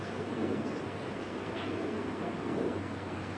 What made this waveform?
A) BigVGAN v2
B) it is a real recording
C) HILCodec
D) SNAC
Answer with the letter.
D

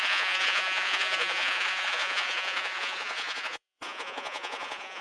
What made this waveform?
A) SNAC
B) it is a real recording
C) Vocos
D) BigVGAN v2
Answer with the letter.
C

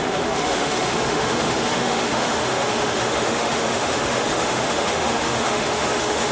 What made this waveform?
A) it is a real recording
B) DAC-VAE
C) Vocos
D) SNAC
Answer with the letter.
B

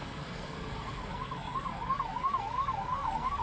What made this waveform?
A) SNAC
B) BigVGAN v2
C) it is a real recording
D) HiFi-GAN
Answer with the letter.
A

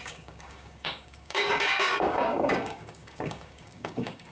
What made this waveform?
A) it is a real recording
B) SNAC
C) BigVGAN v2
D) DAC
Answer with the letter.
D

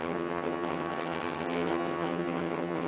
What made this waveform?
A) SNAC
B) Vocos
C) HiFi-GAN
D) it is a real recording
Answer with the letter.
C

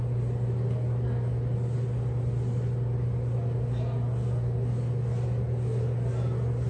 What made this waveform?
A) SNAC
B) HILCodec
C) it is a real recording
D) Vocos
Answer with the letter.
C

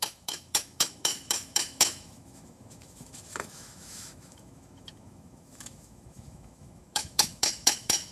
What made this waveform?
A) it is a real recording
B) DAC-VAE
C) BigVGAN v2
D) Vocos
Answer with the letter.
B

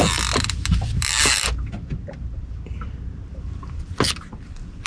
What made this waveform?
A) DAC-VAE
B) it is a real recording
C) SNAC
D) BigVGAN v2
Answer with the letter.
D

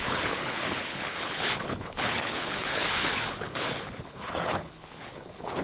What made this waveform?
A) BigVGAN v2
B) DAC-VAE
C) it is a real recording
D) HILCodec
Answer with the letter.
D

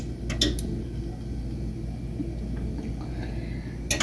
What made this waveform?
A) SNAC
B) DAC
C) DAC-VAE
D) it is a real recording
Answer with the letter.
D